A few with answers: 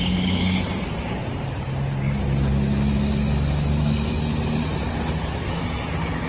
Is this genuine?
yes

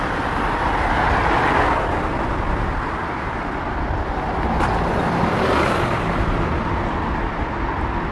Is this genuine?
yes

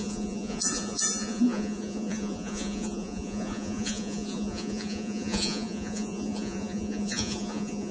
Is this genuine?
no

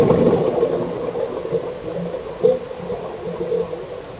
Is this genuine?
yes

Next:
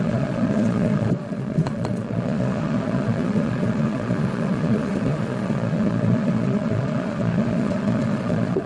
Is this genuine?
no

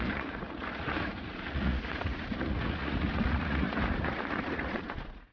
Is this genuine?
no